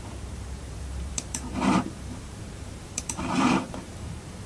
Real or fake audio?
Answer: fake